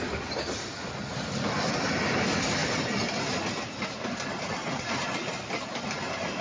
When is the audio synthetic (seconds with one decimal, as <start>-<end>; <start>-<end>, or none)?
none